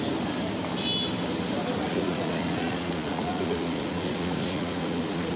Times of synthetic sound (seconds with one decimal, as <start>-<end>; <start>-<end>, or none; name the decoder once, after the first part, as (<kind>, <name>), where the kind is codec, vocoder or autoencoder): 1.9-5.4 (vocoder, Vocos)